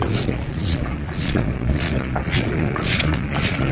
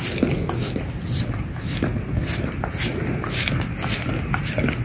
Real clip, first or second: second